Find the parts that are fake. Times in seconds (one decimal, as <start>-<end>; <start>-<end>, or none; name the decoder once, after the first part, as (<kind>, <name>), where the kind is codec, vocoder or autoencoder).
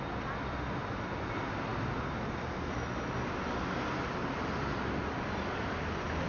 none